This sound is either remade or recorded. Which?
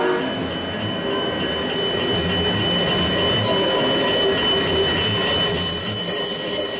recorded